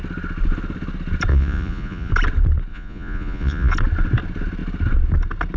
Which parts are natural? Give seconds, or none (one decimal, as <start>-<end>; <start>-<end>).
0.0-1.3; 2.1-2.7; 3.7-5.6